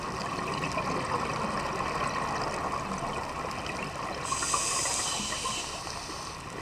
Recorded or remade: recorded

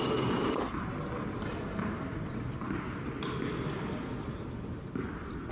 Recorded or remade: recorded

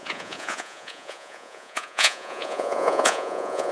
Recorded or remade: remade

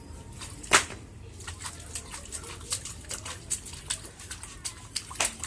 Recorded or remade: recorded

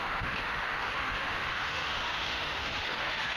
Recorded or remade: remade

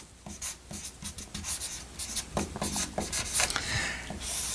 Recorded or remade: recorded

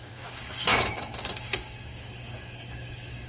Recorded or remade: remade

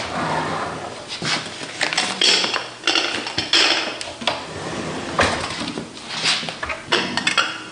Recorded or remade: recorded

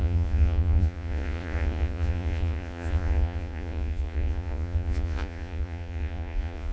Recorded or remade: remade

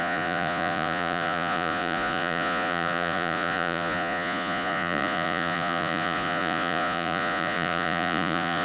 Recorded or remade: remade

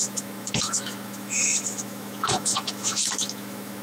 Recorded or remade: remade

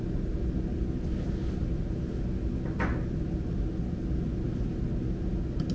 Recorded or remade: recorded